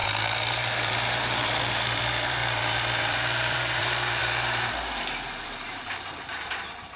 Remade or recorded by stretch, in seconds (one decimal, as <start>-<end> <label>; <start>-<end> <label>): 0.0-7.0 remade